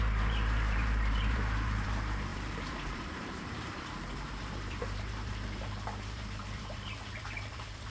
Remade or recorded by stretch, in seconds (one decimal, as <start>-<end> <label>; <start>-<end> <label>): 0.0-7.9 remade